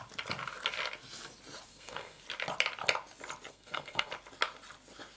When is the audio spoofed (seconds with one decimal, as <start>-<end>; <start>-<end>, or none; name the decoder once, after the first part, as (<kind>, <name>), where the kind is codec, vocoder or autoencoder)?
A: 1.7-2.2 (codec, SNAC); 3.5-4.1